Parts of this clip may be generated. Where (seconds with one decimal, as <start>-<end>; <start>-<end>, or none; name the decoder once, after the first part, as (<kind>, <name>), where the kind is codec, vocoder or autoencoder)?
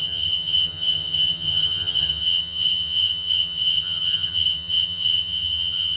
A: 0.0-6.0 (vocoder, HiFi-GAN)